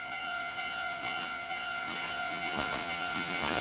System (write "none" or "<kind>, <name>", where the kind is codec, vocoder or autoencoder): vocoder, Vocos